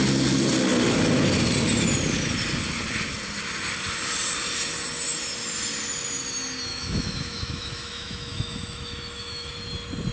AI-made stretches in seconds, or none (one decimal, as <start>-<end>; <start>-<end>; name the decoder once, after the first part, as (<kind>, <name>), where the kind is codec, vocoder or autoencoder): 6.7-9.5 (autoencoder, DAC-VAE)

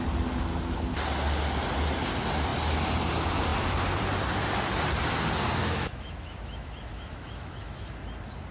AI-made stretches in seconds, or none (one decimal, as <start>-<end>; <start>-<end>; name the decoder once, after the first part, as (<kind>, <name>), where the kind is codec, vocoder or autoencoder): 5.6-8.0 (autoencoder, DAC-VAE)

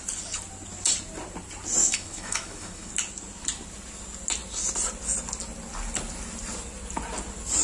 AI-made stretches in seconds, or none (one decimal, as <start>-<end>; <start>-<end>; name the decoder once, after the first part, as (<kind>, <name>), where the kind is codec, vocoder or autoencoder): 1.8-2.9 (autoencoder, DAC-VAE)

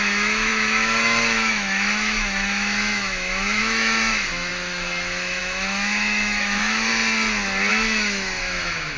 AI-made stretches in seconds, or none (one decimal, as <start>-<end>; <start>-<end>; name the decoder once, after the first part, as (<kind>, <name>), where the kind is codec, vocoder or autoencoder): 0.0-6.9 (autoencoder, DAC-VAE); 7.7-9.0